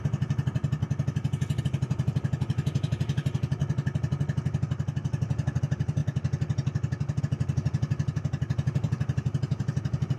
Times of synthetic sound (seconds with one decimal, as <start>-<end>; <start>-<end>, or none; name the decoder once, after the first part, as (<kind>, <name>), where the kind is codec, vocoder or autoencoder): 0.0-0.8 (vocoder, BigVGAN v2); 1.6-3.6; 5.6-6.0; 7.2-10.2